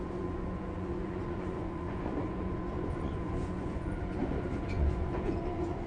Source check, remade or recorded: remade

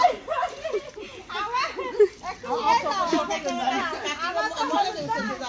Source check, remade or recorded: recorded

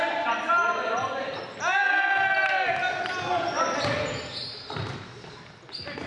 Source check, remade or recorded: recorded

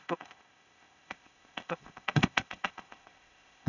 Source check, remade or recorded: remade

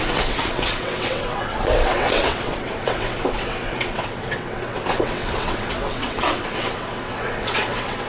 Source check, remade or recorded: remade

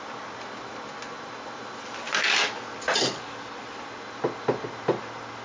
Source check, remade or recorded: recorded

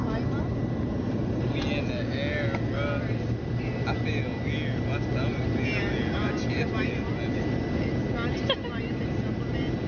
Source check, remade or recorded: recorded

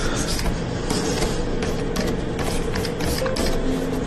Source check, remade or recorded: recorded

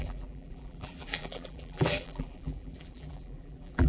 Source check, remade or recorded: remade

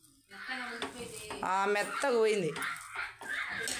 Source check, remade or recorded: recorded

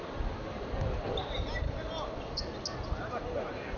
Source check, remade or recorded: recorded